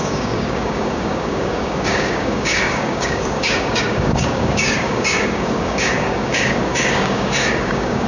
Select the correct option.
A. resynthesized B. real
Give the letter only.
A